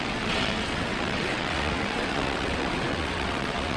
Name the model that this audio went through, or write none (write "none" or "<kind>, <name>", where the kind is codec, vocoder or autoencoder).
vocoder, WaveNeXt